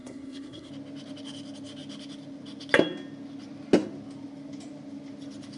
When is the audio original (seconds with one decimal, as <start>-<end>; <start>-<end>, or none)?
0.7-5.6